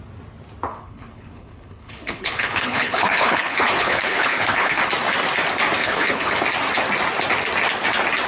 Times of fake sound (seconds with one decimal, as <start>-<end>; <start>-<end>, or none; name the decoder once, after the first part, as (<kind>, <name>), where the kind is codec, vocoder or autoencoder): 0.7-4.8 (codec, HILCodec); 5.8-6.4